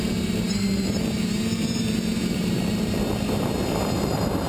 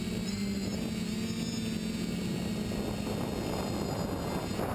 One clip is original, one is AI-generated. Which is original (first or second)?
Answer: second